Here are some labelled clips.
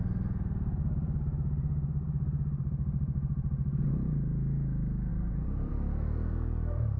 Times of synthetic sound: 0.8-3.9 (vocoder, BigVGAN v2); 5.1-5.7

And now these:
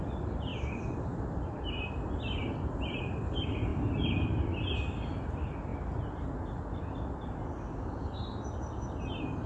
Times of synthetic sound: 0.5-1.9 (vocoder, BigVGAN v2); 2.4-3.2